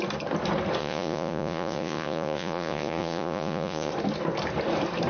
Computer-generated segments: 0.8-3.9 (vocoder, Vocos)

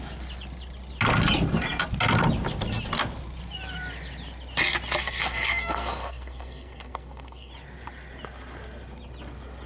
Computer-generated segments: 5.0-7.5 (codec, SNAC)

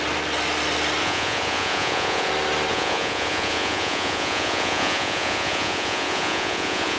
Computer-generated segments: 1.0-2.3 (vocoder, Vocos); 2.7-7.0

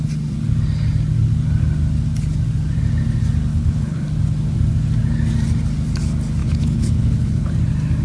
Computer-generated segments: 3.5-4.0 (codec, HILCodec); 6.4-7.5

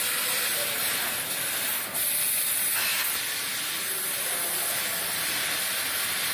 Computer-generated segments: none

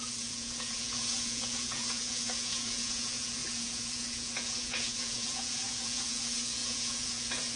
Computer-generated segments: 0.0-7.6 (vocoder, Vocos)

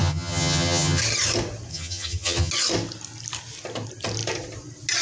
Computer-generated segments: 0.0-1.0 (vocoder, HiFi-GAN); 1.7-2.5

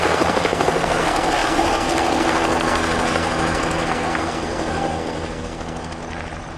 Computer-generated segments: 0.0-6.0 (codec, SNAC)